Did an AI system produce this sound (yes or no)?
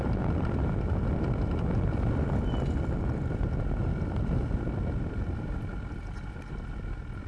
no